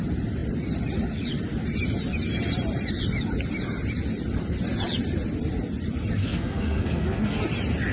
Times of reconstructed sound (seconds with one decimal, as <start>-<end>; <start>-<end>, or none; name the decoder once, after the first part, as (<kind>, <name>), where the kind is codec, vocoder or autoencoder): 6.2-7.4 (codec, SNAC)